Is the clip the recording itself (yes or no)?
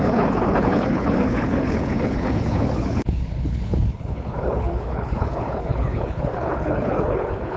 no